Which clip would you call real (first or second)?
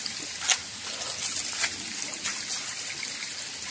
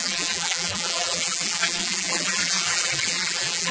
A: first